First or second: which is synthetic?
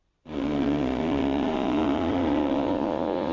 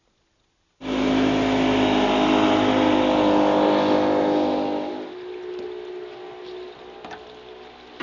first